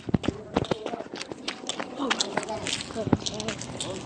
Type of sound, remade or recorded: recorded